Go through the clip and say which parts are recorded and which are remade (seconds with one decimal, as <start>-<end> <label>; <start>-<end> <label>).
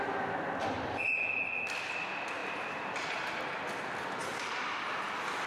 0.0-2.4 recorded; 2.4-3.4 remade; 3.4-5.5 recorded